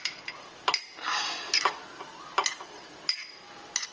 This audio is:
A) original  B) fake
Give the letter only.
A